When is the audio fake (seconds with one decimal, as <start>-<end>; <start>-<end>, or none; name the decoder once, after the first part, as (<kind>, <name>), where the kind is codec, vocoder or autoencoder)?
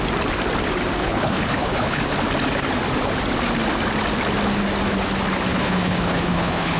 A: 1.0-2.0 (codec, HILCodec); 5.5-6.8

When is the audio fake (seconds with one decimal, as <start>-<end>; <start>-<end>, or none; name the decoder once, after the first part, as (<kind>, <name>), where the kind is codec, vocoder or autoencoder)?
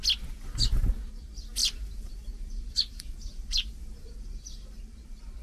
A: 1.6-4.8 (vocoder, BigVGAN v2)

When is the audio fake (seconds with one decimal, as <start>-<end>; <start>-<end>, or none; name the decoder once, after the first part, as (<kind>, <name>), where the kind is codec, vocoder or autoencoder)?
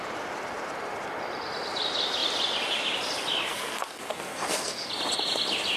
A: 3.5-4.9 (codec, SNAC)